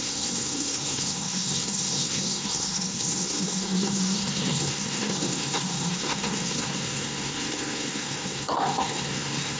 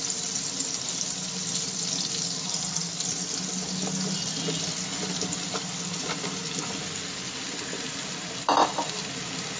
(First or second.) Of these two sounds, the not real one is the first